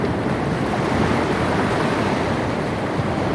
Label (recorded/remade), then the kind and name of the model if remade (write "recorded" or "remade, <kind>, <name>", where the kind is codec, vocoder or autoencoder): remade, vocoder, BigVGAN v2